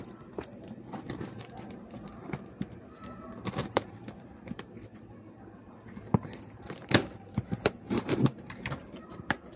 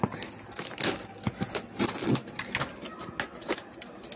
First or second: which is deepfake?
first